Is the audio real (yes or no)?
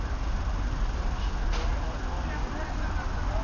yes